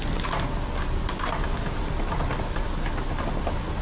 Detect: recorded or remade recorded